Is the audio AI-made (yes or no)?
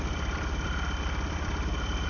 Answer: yes